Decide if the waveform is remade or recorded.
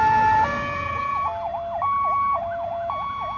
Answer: recorded